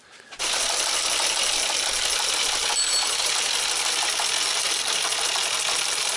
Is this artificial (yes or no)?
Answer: no